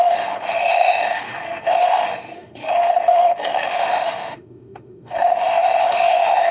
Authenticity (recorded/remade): remade